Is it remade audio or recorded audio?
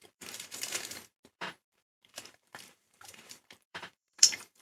remade